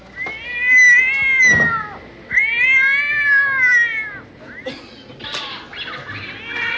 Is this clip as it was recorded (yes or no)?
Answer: yes